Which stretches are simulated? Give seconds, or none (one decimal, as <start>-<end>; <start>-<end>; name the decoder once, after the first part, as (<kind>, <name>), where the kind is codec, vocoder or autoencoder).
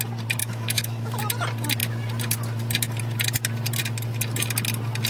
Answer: 0.4-1.2 (autoencoder, DAC-VAE)